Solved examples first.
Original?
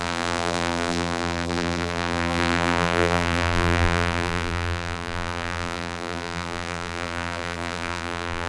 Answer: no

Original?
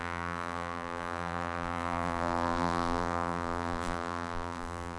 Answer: no